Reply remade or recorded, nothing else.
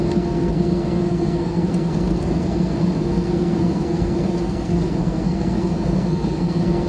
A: remade